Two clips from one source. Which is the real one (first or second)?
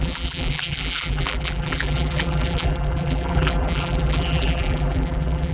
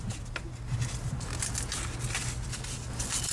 second